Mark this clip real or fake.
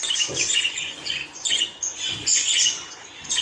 fake